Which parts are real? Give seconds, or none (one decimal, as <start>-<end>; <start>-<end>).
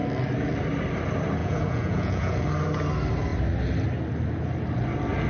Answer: 0.0-1.4; 2.4-5.3